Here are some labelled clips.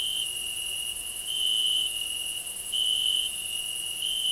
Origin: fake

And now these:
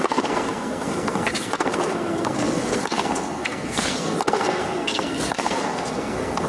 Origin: fake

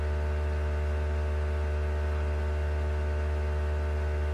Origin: real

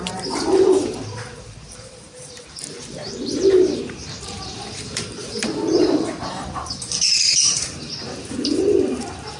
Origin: fake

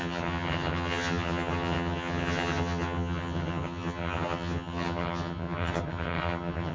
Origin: fake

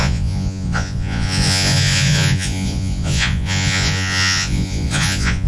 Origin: fake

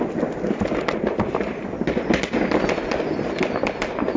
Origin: real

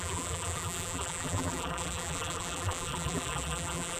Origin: fake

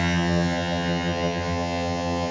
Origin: fake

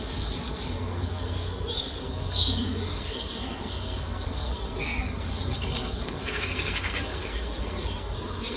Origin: fake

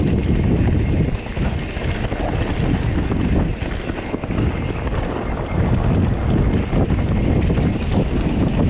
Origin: real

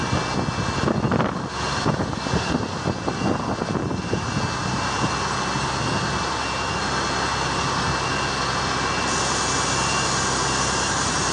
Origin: real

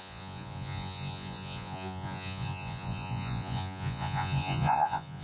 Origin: fake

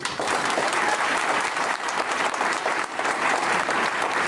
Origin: fake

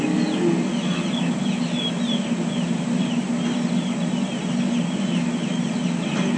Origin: real